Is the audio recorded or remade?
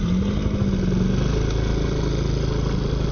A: recorded